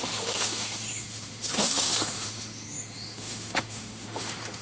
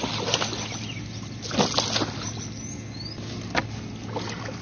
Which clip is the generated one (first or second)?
first